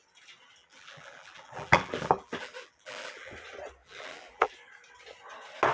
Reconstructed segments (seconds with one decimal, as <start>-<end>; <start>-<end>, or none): 0.6-3.3; 3.8-4.5